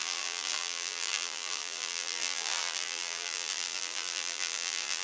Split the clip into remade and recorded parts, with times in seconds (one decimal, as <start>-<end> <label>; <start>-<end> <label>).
0.0-5.0 remade

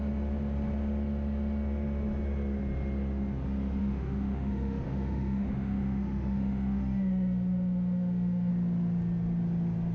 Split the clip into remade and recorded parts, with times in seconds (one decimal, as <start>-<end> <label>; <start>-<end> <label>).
0.0-3.8 recorded; 3.8-8.5 remade; 8.5-9.9 recorded

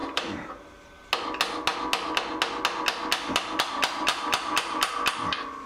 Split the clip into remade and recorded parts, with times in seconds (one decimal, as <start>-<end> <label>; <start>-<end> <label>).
0.0-0.5 remade; 0.5-4.1 recorded; 4.1-4.9 remade; 4.9-5.7 recorded